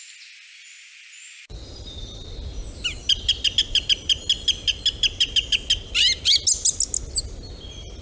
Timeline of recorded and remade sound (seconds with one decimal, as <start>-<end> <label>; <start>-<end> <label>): 0.0-8.0 recorded